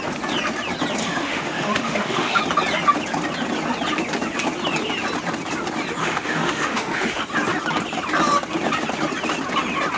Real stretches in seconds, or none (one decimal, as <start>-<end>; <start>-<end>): 0.0-1.0; 2.4-6.0; 7.2-10.0